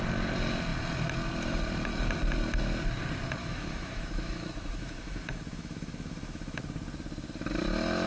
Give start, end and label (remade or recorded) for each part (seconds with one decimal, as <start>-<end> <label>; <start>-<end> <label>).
0.0-3.4 recorded; 3.4-6.6 remade; 6.6-8.1 recorded